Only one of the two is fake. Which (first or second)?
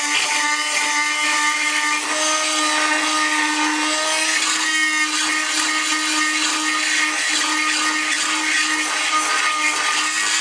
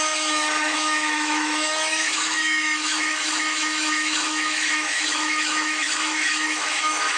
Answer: second